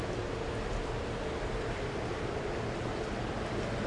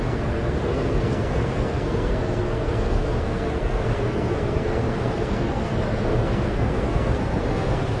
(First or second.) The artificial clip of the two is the second